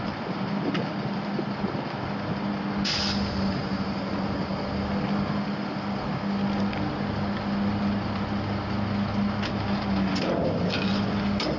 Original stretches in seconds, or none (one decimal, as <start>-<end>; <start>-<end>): 0.0-11.6